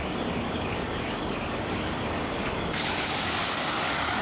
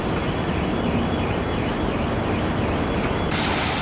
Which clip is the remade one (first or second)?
first